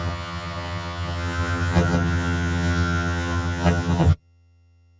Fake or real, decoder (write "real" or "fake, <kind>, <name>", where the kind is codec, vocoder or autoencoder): fake, vocoder, HiFi-GAN